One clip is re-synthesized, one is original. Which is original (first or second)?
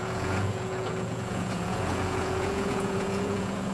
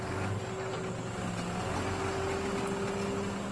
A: second